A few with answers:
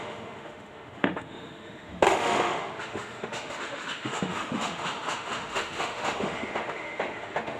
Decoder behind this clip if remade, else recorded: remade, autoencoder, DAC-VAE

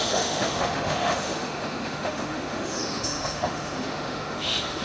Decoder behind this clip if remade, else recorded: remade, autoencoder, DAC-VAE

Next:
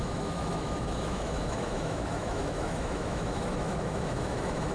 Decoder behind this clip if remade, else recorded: remade, autoencoder, DAC-VAE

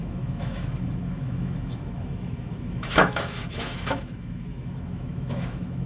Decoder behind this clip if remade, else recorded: remade, autoencoder, DAC-VAE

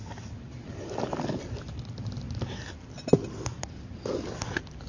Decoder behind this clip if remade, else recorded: recorded